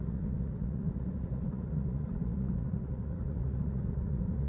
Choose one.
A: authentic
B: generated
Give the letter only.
B